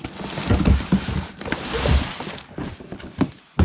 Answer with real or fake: real